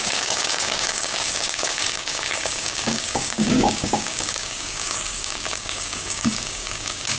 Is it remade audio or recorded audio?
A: remade